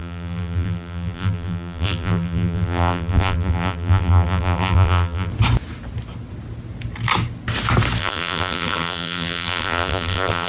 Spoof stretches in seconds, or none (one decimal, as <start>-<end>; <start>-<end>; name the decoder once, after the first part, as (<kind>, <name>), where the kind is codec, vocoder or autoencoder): 0.0-5.3 (vocoder, BigVGAN v2); 8.0-10.5